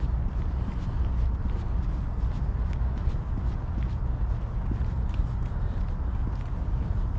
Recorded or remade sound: recorded